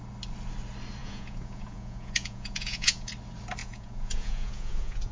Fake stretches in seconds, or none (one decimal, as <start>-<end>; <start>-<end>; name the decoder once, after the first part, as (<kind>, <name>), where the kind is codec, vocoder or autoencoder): 1.0-3.1 (vocoder, Vocos); 3.6-5.1